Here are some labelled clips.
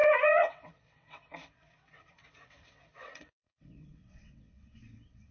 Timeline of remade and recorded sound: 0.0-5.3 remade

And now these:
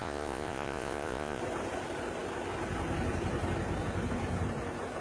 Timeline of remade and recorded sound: 0.0-1.4 remade; 1.4-5.0 recorded

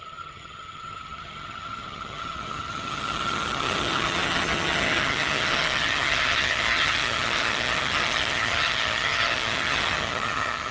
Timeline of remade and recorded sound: 0.0-10.7 remade